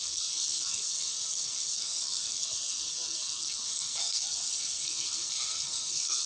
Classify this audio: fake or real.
fake